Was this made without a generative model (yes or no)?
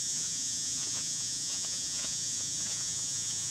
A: no